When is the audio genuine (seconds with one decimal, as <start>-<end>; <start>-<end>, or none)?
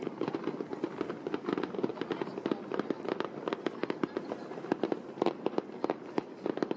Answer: 0.0-6.8